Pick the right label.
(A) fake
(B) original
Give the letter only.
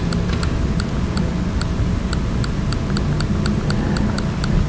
B